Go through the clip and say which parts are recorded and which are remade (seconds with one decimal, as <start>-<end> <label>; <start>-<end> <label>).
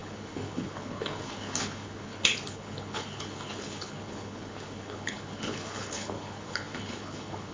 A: 0.0-7.5 remade